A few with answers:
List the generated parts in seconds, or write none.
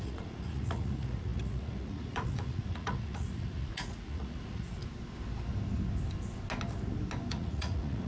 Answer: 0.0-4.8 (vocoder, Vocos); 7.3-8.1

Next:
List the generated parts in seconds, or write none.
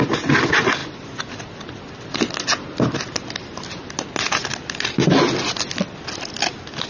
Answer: none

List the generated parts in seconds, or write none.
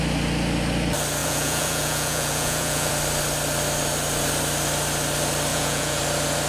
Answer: 1.2-2.9 (vocoder, Vocos); 5.5-6.0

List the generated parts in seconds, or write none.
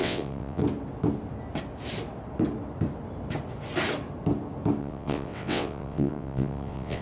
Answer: 0.0-0.6 (vocoder, WaveNeXt); 4.8-7.0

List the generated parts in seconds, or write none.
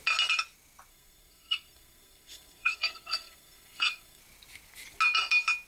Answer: 0.9-4.2 (codec, SNAC)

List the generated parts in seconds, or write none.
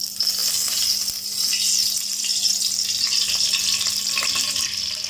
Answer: none